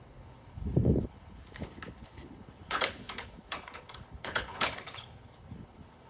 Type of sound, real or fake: fake